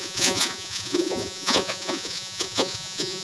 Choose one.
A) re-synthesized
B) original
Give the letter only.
A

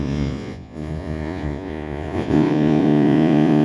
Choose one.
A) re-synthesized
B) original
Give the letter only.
A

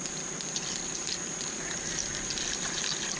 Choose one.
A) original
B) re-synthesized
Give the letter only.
A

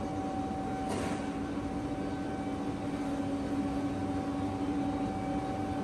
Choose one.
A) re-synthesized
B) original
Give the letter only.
B